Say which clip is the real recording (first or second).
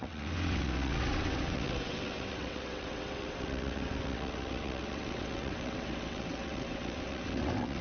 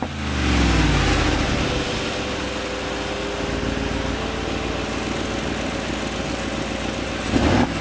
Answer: second